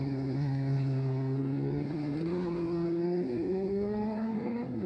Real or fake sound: fake